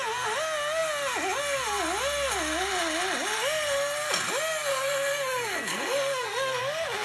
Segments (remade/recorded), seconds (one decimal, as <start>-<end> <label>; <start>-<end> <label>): 0.0-4.7 recorded; 4.7-6.6 remade; 6.6-7.0 recorded